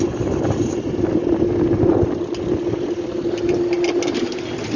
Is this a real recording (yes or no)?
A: yes